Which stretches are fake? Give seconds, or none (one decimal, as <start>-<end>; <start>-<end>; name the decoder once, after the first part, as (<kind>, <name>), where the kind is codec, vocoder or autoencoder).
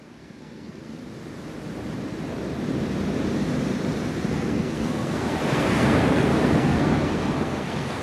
0.0-1.0 (codec, SNAC); 4.3-8.0